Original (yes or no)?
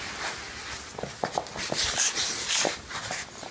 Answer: yes